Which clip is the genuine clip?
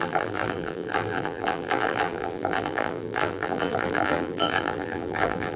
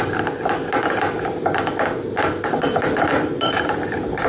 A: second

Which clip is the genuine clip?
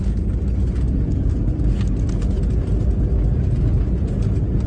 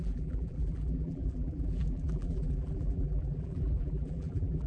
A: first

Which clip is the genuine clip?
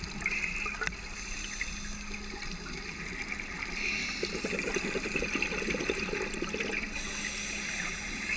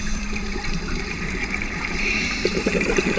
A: first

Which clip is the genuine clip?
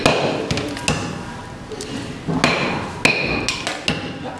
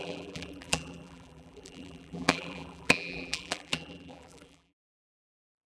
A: first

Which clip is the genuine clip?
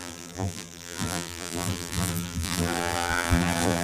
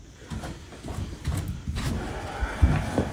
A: second